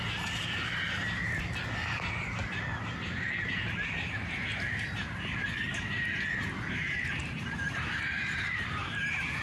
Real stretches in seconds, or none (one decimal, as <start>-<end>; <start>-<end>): 0.0-2.4; 3.7-4.5; 5.6-7.2